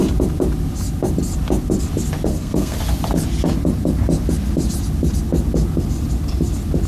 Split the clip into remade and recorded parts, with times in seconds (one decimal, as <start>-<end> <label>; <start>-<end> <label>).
0.0-2.3 recorded; 2.3-2.8 remade; 2.8-6.9 recorded